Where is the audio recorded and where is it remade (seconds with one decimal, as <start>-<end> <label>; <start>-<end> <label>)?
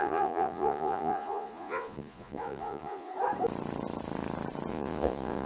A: 0.0-3.1 remade; 3.1-4.7 recorded; 4.7-5.5 remade